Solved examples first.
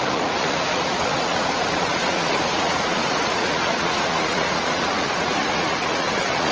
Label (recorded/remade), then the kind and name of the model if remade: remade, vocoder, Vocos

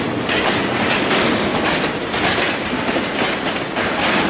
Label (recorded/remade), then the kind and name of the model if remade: recorded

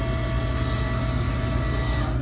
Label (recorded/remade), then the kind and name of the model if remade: recorded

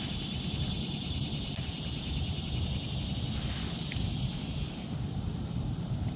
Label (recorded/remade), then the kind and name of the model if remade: recorded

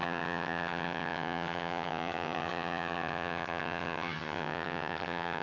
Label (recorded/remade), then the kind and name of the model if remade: remade, vocoder, HiFi-GAN